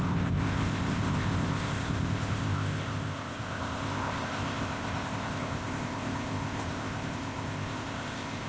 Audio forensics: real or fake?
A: fake